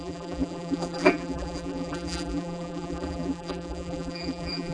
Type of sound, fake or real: fake